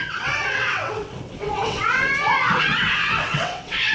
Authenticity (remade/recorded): remade